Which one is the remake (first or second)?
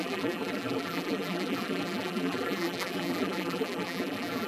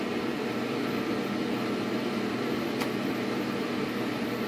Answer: first